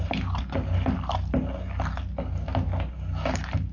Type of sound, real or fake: real